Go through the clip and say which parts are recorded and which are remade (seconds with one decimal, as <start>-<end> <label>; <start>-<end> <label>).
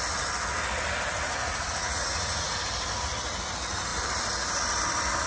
0.0-1.2 recorded; 1.2-2.6 remade; 2.6-5.3 recorded